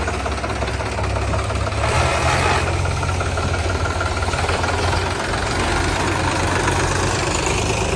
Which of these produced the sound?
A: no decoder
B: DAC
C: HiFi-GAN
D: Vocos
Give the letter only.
A